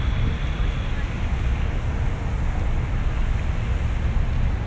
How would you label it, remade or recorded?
recorded